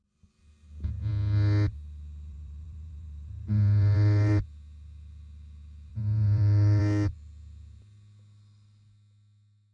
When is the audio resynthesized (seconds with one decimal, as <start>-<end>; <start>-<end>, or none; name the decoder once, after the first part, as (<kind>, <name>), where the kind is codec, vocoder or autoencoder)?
2.3-4.4 (vocoder, BigVGAN v2); 5.9-6.8